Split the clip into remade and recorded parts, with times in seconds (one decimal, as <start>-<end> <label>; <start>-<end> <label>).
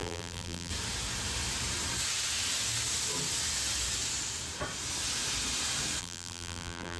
0.0-0.7 remade; 0.7-6.0 recorded; 6.0-7.0 remade